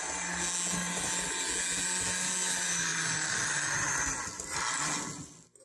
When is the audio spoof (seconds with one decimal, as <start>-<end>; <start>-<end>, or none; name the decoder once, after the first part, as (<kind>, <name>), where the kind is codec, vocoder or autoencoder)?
none